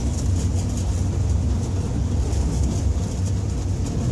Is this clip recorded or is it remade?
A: recorded